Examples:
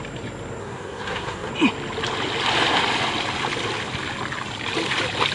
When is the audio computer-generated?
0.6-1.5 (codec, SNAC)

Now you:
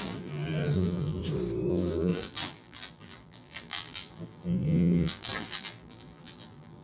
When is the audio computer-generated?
0.0-1.2 (vocoder, BigVGAN v2); 1.7-6.8

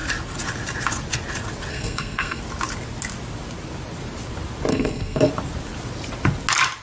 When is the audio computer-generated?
1.7-2.4 (codec, SNAC); 4.7-5.3

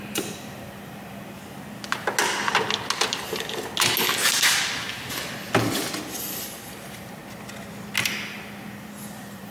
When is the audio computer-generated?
0.0-1.4 (vocoder, BigVGAN v2); 6.2-7.2; 8.0-9.5

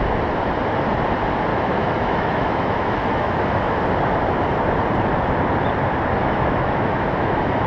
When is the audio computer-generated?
1.5-3.8 (autoencoder, DAC-VAE); 6.2-7.7

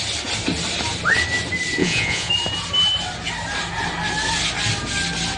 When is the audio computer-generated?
1.8-2.3 (vocoder, Vocos)

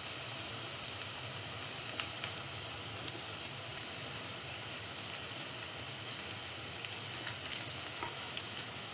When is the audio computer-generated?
7.5-8.9 (autoencoder, DAC-VAE)

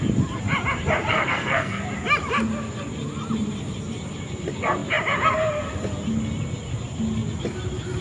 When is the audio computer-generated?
1.1-1.8 (codec, SNAC)